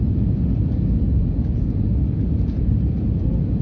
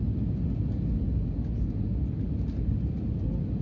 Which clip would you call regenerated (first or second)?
first